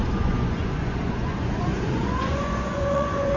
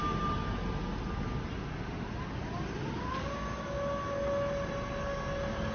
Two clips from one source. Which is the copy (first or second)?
first